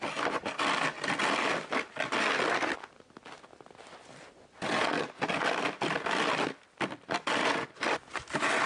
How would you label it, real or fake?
real